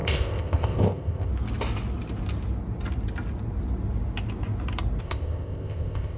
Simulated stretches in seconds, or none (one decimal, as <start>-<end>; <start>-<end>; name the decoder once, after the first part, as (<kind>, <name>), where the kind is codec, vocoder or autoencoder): 0.0-1.3 (codec, ZipCodec); 5.0-6.2